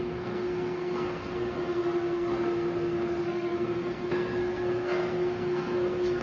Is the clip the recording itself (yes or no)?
no